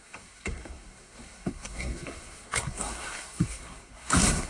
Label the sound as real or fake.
fake